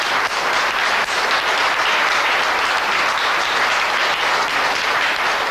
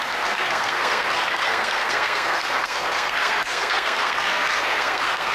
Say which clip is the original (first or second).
first